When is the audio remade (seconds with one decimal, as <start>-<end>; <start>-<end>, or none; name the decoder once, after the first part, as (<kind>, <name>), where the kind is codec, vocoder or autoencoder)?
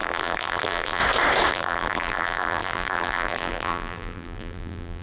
0.0-1.0 (vocoder, BigVGAN v2); 1.5-5.0